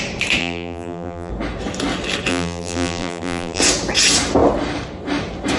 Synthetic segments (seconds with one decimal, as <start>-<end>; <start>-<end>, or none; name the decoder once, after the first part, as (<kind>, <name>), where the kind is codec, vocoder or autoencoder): 0.4-1.3 (vocoder, BigVGAN v2); 2.3-3.6